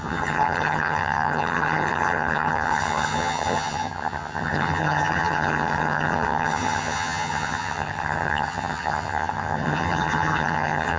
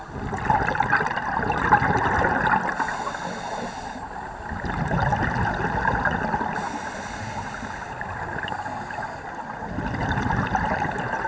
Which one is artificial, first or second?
first